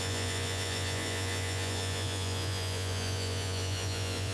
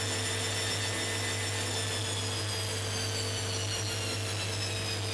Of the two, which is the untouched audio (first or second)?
second